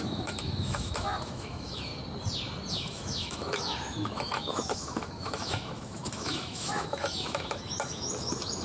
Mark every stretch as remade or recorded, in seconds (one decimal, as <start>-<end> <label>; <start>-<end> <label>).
0.0-1.9 remade; 1.9-2.7 recorded; 2.7-8.6 remade